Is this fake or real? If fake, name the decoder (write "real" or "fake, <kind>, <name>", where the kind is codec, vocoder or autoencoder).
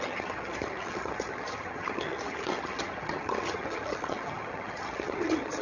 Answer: fake, vocoder, HiFi-GAN